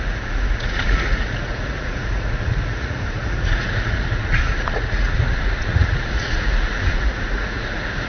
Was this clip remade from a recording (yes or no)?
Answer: yes